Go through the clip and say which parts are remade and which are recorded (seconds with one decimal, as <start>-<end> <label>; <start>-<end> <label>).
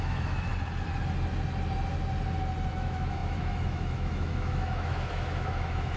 0.0-0.5 remade; 0.5-2.7 recorded; 2.7-6.0 remade